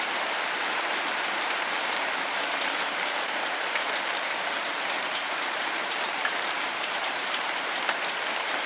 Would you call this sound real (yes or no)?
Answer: no